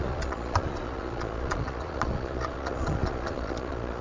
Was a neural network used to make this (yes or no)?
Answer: yes